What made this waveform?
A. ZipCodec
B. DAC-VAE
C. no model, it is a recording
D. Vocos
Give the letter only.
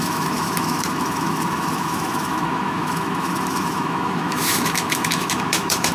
B